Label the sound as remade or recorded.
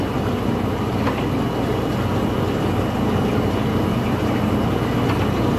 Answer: recorded